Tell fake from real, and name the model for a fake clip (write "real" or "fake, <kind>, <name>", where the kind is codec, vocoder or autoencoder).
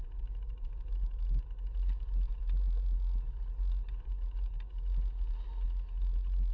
real